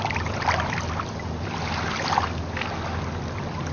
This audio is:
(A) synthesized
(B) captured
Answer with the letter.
B